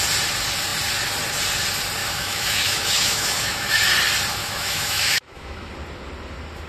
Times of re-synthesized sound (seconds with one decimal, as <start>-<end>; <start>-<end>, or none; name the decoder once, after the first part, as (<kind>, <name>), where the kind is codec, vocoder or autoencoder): 2.0-3.7 (autoencoder, DAC-VAE); 4.4-5.7